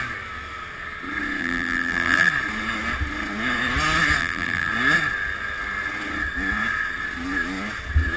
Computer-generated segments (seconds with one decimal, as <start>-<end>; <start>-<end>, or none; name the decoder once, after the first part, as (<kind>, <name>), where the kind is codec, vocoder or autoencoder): 1.4-2.3 (vocoder, BigVGAN v2); 4.2-4.7